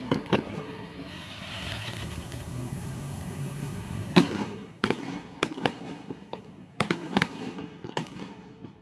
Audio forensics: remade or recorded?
remade